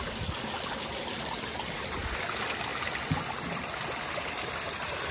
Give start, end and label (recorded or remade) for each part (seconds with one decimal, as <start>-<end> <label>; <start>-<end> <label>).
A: 0.0-5.1 recorded